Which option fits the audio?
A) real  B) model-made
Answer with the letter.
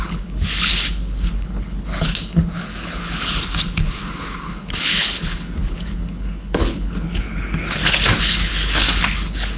B